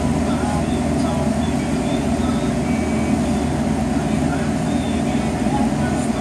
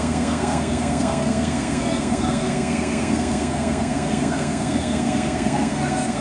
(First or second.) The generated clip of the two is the second